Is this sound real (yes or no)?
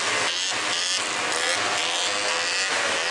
yes